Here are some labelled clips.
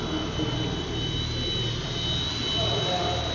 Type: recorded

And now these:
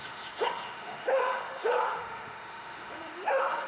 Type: remade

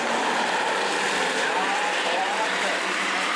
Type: remade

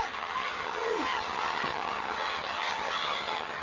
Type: remade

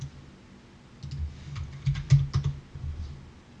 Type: recorded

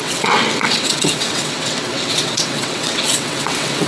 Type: remade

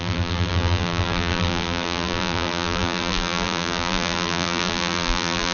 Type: remade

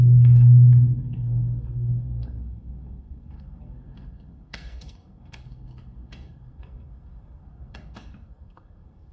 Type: remade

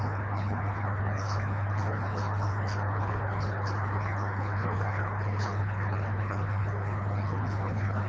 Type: remade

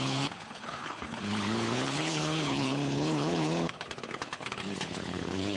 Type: remade